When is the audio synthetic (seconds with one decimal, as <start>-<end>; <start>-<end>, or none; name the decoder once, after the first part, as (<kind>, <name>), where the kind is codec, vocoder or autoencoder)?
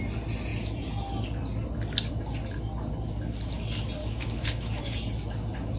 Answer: 4.0-4.8 (autoencoder, DAC-VAE)